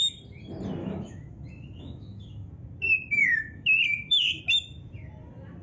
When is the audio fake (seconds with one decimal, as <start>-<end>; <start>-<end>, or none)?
0.8-2.5; 3.2-4.4

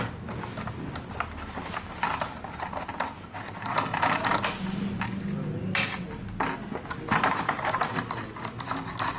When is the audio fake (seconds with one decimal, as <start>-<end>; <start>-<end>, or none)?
none